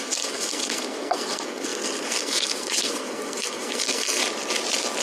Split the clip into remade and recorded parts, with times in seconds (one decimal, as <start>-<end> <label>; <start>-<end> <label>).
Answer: 0.0-4.2 remade; 4.2-5.0 recorded